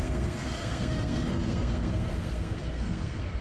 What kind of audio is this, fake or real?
fake